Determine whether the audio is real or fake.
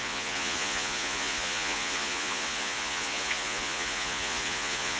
fake